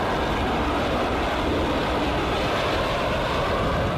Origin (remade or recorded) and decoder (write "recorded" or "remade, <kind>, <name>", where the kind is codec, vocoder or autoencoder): recorded